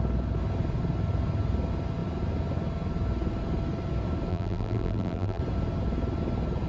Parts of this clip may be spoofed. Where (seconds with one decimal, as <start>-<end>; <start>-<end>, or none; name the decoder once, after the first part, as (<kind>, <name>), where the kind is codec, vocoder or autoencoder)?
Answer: 4.3-5.4 (vocoder, BigVGAN v2)